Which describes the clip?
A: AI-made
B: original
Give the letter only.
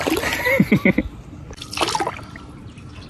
B